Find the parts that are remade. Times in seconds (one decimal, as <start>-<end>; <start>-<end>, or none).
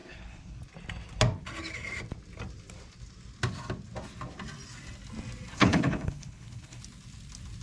0.0-0.6; 5.6-6.8